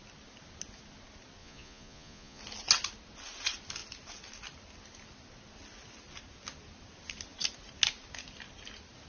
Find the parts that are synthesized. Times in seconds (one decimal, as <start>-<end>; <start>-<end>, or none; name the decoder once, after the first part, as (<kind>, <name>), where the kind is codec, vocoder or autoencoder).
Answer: 1.4-2.4 (vocoder, Vocos)